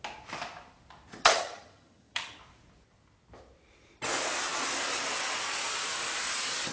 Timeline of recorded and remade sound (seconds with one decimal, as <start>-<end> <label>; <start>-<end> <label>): 0.0-1.2 recorded; 1.2-2.4 remade; 2.4-6.7 recorded